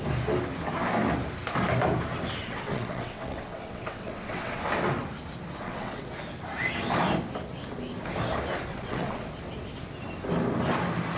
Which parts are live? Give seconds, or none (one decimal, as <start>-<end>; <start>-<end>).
0.0-2.4; 4.6-5.6; 6.1-8.7; 9.2-11.2